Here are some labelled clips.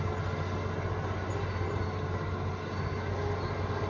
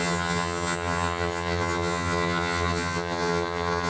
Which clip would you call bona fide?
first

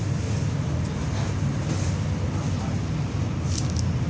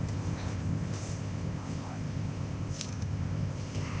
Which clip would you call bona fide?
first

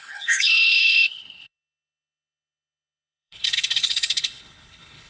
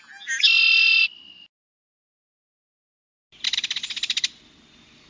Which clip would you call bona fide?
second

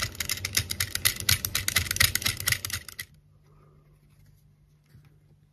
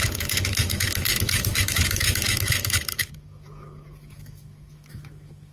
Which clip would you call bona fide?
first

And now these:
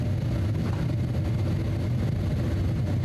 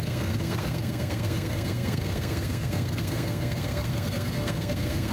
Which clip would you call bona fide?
first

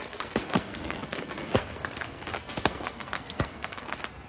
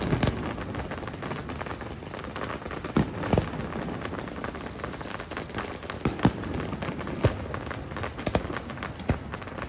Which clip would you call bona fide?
second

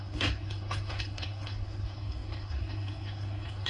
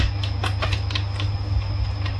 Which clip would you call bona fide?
second